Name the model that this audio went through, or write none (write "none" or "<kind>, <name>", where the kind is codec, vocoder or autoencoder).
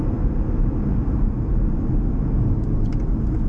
none